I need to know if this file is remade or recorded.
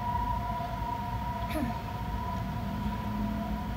recorded